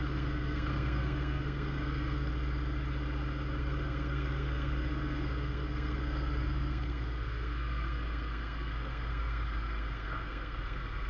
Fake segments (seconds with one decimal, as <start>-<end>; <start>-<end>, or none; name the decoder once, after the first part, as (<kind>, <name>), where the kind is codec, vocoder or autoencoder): 0.0-2.3 (codec, SNAC); 3.6-11.1